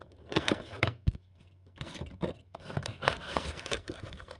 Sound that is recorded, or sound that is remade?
remade